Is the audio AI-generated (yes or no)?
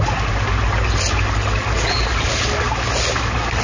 no